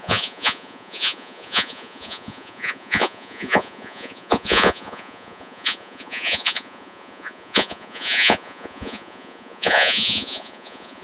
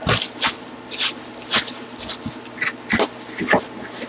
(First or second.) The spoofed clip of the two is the first